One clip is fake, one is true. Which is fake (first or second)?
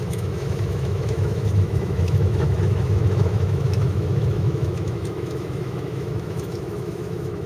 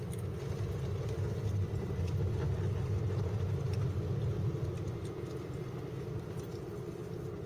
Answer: first